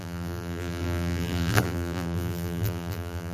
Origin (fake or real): fake